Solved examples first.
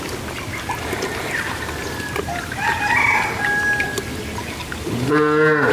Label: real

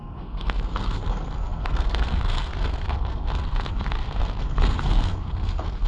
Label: fake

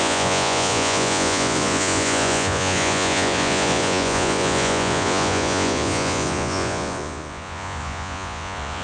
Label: fake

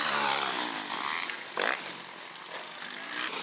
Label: real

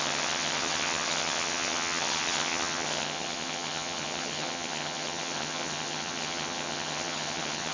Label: fake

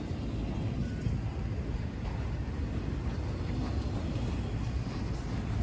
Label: real